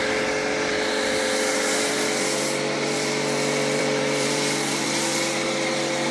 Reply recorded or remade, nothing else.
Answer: remade